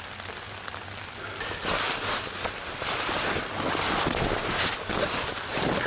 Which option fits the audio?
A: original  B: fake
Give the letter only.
A